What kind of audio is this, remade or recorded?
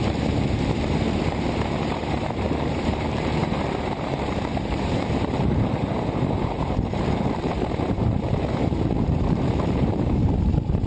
remade